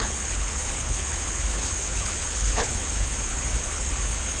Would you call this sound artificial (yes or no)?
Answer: yes